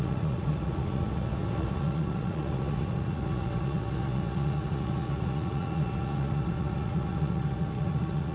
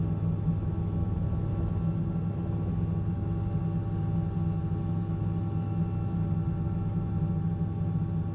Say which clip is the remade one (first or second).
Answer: first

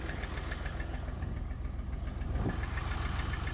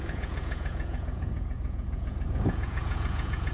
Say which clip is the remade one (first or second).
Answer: second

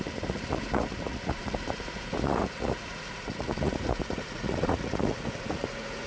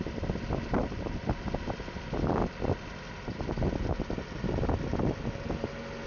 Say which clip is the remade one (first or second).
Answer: first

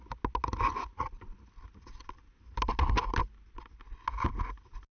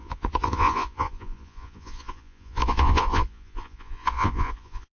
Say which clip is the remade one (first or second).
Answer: second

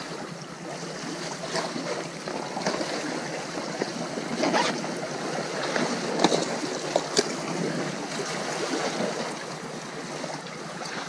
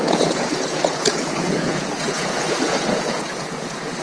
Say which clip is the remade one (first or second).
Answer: second